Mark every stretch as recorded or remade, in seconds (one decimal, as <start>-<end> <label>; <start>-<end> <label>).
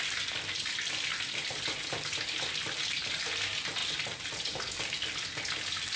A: 0.0-6.0 recorded